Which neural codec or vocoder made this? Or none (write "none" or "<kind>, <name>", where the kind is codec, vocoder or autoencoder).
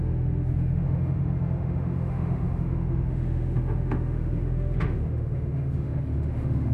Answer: autoencoder, DAC-VAE